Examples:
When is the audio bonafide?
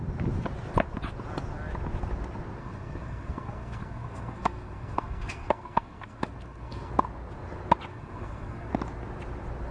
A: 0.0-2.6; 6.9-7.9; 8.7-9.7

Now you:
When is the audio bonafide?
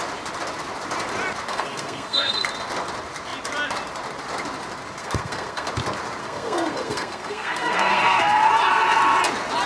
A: 0.0-1.5; 2.5-5.0; 5.7-6.2; 8.5-9.7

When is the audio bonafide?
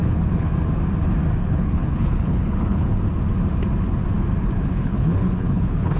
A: 0.5-1.4; 3.0-4.7